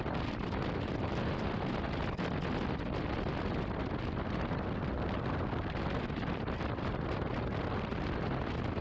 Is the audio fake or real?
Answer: real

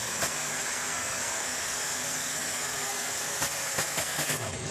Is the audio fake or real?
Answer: fake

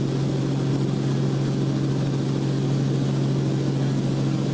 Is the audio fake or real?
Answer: real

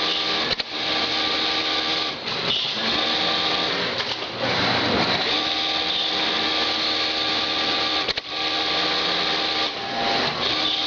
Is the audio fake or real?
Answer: fake